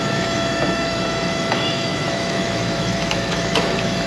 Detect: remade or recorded remade